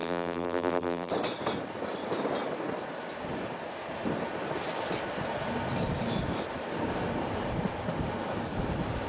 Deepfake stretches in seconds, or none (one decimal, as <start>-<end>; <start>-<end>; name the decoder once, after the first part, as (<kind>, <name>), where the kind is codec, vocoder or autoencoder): 0.0-1.1 (vocoder, BigVGAN v2)